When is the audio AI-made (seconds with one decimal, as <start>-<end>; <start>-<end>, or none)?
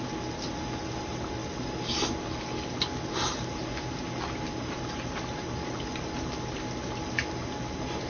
none